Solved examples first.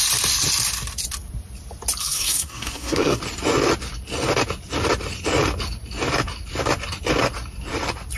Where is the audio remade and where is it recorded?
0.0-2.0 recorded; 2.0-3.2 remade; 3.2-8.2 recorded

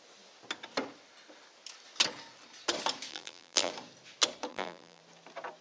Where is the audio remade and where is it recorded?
0.0-3.1 recorded; 3.1-3.7 remade; 3.7-4.5 recorded; 4.5-5.0 remade; 5.0-5.6 recorded

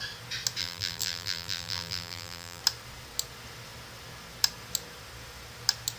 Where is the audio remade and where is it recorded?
0.0-0.6 recorded; 0.6-2.6 remade; 2.6-6.0 recorded